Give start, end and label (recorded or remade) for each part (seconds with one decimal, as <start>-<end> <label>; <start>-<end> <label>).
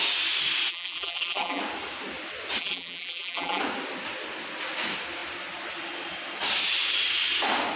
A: 0.0-0.7 recorded; 0.7-1.6 remade; 1.6-2.6 recorded; 2.6-3.6 remade; 3.6-7.8 recorded